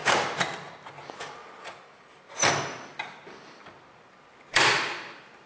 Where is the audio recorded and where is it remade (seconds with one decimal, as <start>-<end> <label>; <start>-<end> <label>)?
0.0-5.5 recorded